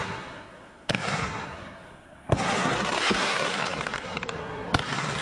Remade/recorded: remade